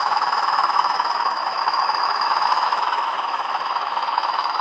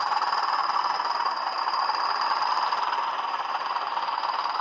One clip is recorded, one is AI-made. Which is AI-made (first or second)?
first